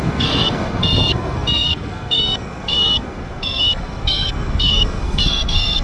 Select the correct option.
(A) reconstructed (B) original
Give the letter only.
A